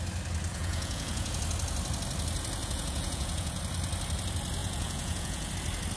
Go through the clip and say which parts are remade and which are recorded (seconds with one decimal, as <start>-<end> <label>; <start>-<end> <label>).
0.0-0.5 recorded; 0.5-1.4 remade; 1.4-2.6 recorded; 2.6-3.6 remade; 3.6-4.6 recorded; 4.6-5.5 remade; 5.5-6.0 recorded